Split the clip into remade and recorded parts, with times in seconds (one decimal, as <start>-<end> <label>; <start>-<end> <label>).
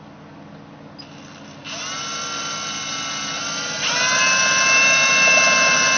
0.0-6.0 recorded